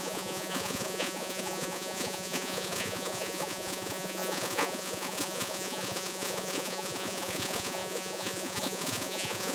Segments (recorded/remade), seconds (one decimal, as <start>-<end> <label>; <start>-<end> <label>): 0.0-9.5 remade